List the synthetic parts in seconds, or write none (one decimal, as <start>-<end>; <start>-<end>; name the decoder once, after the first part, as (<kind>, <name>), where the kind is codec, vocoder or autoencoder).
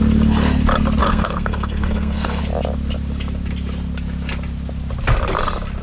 1.0-2.4 (codec, SNAC)